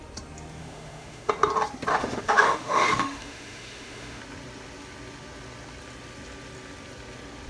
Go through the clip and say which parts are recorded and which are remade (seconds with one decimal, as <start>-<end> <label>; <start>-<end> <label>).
0.0-0.6 recorded; 0.6-1.3 remade; 1.3-1.9 recorded; 1.9-4.2 remade; 4.2-7.5 recorded